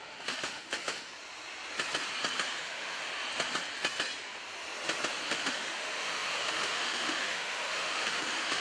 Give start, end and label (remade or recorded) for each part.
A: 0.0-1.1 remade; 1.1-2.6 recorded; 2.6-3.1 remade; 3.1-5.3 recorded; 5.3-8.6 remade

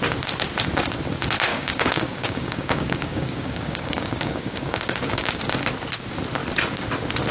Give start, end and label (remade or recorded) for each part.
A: 0.0-1.5 recorded; 1.5-5.4 remade; 5.4-7.3 recorded

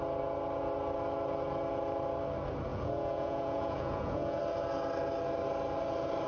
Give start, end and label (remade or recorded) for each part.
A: 0.0-2.7 recorded; 2.7-4.4 remade; 4.4-6.3 recorded

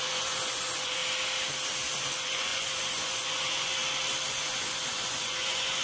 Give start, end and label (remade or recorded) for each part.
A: 0.0-1.0 remade; 1.0-2.0 recorded; 2.0-3.8 remade; 3.8-4.3 recorded; 4.3-5.8 remade

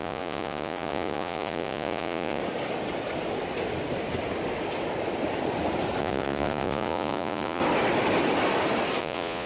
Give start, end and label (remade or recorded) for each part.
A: 0.0-2.4 remade; 2.4-6.0 recorded; 6.0-7.6 remade; 7.6-9.0 recorded; 9.0-9.5 remade

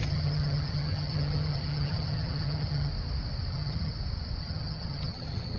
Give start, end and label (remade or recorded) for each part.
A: 0.0-2.9 remade; 2.9-3.5 recorded; 3.5-3.9 remade; 3.9-4.4 recorded; 4.4-5.6 remade